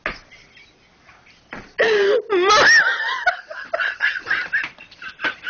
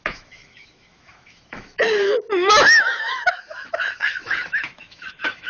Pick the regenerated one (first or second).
second